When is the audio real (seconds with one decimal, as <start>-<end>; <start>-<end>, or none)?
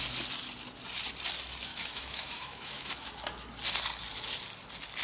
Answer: 0.0-1.7; 3.1-5.0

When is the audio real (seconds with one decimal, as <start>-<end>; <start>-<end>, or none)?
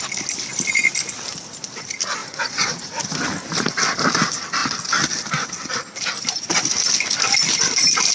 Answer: 0.0-2.2; 2.8-8.1